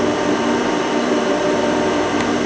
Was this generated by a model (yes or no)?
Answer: yes